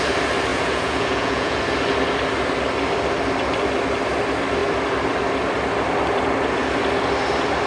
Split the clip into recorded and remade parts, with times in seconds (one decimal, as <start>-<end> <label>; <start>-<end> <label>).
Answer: 0.0-0.5 recorded; 0.5-1.6 remade; 1.6-7.7 recorded